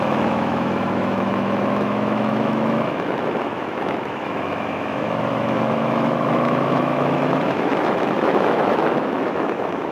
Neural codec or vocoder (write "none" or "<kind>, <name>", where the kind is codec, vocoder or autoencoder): autoencoder, DAC-VAE